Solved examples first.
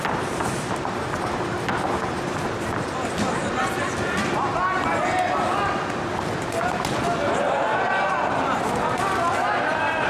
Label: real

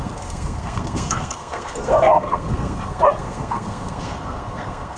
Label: fake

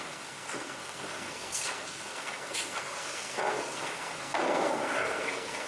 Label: fake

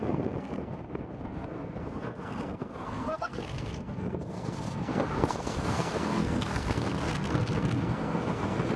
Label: fake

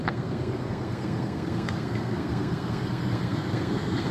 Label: fake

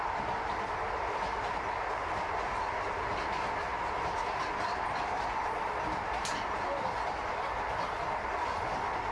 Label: real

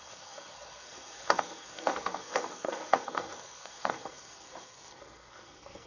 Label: fake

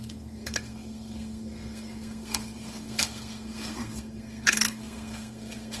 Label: fake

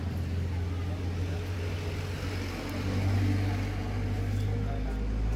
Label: real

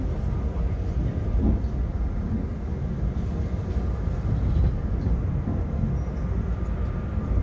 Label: real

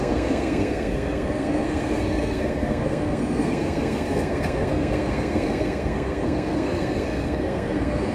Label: fake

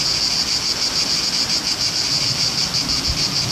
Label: real